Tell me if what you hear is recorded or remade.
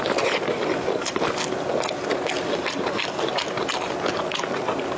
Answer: recorded